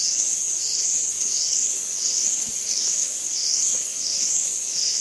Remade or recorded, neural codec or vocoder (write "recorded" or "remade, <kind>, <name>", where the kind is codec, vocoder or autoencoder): remade, codec, SNAC